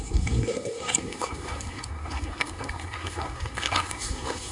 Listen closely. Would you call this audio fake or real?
fake